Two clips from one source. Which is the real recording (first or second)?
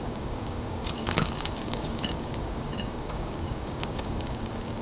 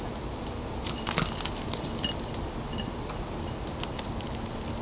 second